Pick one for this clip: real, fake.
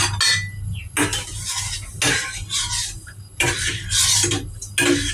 real